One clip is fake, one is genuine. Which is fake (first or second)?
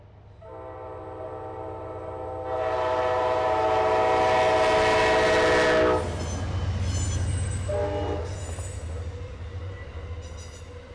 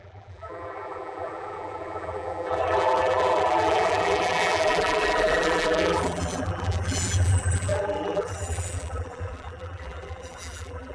second